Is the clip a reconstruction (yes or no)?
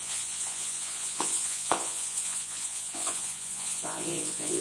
yes